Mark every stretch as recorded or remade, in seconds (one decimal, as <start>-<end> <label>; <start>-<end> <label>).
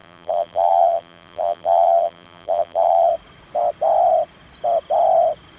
0.0-3.1 remade; 3.1-5.6 recorded